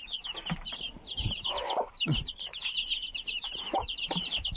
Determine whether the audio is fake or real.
real